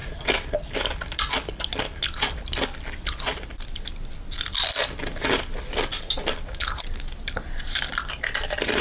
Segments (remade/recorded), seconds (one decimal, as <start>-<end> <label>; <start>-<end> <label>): 0.0-8.8 recorded